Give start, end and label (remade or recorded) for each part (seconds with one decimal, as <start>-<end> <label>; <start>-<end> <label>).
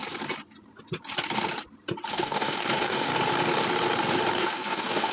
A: 0.0-2.1 recorded; 2.1-3.1 remade; 3.1-4.4 recorded; 4.4-5.1 remade